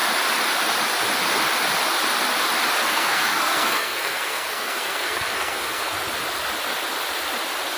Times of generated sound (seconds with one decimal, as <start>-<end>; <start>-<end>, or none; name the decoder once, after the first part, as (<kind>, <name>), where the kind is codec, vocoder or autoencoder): 2.8-5.9 (codec, SNAC)